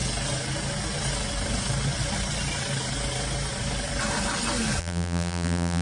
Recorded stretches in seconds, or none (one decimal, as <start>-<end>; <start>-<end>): 0.0-4.8